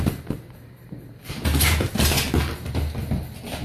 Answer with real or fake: real